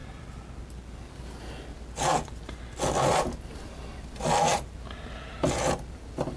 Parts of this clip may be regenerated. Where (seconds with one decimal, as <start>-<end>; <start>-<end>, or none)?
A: none